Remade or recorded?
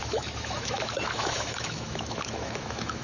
remade